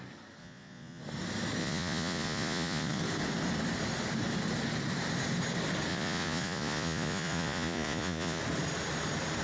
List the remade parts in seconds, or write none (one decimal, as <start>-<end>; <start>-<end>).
0.4-1.0; 1.6-3.0; 5.9-8.4